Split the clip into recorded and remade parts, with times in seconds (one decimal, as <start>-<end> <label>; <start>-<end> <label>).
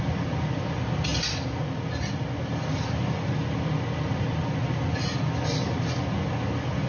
0.0-6.9 recorded